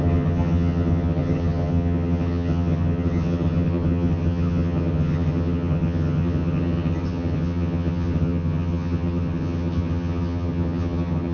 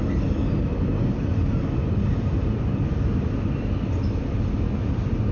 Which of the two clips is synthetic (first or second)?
first